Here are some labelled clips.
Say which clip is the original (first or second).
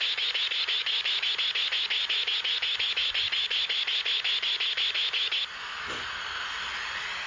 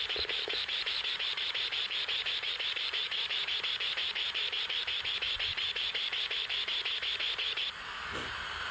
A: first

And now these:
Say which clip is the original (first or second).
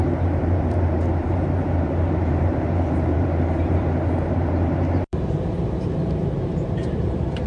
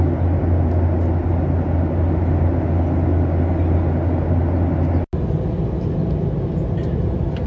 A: second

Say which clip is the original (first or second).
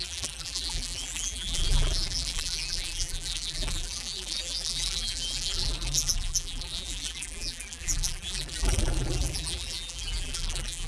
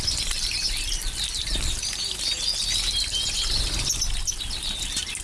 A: second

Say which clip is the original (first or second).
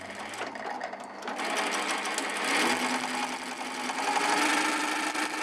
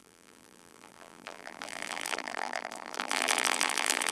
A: first